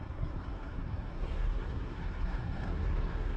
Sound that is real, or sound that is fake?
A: fake